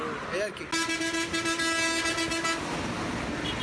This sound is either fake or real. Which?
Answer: real